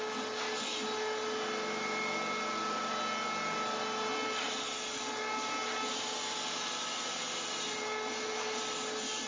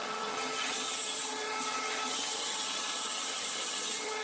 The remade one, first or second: second